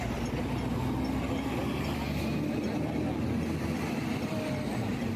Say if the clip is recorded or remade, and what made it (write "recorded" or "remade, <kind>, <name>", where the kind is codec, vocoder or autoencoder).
recorded